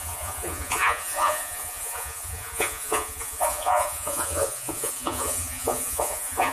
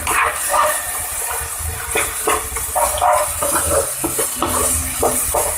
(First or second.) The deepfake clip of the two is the first